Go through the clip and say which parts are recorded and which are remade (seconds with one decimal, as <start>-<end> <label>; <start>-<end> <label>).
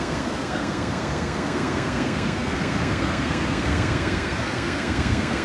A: 0.0-5.4 remade